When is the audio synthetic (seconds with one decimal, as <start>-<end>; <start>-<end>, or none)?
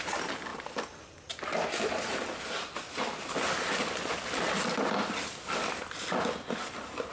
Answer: none